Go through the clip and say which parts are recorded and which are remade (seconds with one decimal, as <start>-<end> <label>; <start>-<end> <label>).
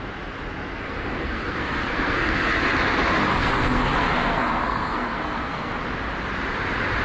0.0-0.7 recorded; 0.7-2.6 remade; 2.6-3.4 recorded; 3.4-5.7 remade; 5.7-7.0 recorded